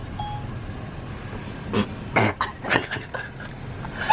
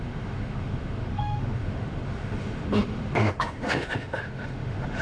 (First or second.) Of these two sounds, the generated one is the second